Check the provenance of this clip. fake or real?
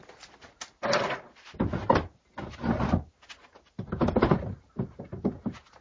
real